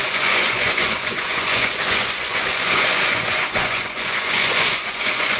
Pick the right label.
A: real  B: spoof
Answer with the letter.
B